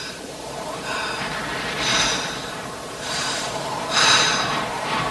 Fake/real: fake